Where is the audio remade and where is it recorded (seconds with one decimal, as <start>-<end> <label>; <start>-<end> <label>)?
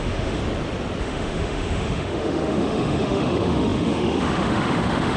0.0-0.4 remade; 0.4-1.0 recorded; 1.0-5.2 remade